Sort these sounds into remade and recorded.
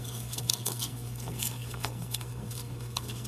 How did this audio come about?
remade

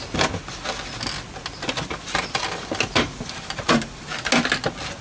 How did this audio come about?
recorded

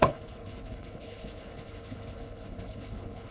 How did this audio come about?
remade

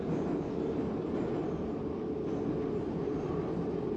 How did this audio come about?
recorded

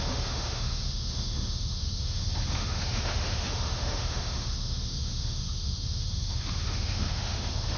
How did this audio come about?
remade